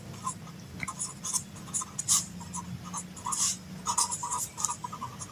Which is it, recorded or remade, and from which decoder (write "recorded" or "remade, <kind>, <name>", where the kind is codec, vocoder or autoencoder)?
recorded